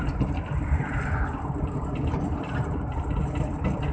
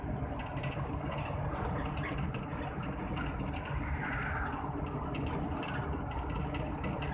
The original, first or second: second